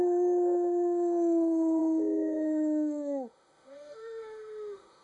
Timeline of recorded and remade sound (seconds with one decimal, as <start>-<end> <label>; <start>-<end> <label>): 0.0-5.0 remade